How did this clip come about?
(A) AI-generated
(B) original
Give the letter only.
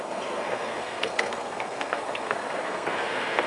A